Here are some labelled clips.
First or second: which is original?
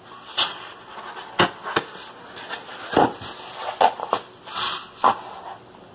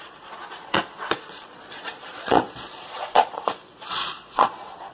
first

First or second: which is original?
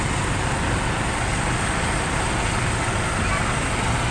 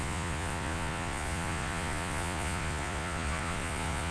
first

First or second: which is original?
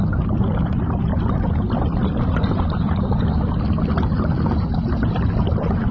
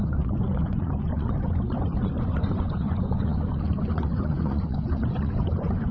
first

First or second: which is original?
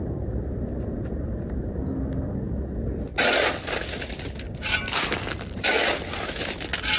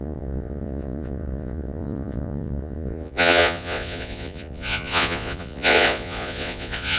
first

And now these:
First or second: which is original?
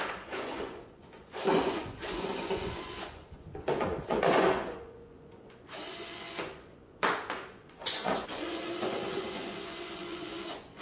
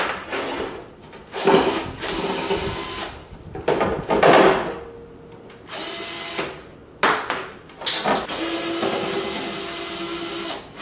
second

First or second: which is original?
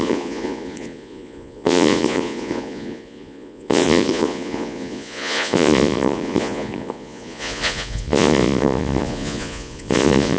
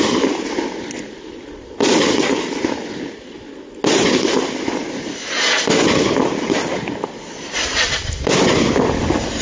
second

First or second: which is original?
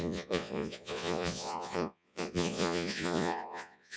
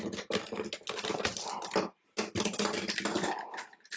second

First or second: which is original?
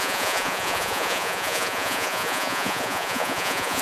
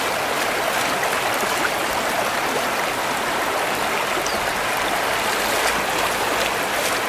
second